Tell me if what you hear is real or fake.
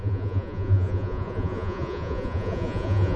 fake